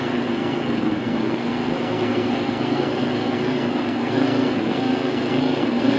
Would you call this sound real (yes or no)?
no